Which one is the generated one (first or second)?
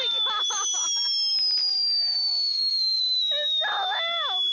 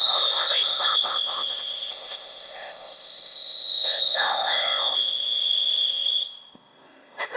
second